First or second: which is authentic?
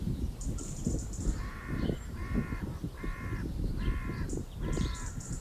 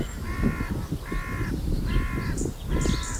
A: second